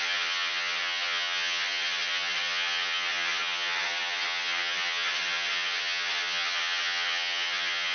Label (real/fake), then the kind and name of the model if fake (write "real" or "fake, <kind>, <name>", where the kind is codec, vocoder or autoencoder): fake, vocoder, HiFi-GAN